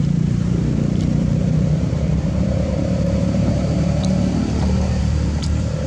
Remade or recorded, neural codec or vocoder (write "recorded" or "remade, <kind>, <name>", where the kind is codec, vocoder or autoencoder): remade, vocoder, BigVGAN v2